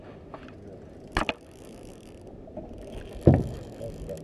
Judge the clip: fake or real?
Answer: real